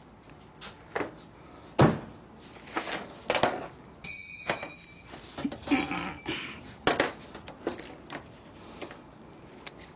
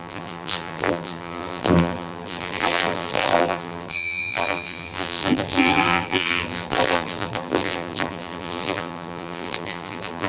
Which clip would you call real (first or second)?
first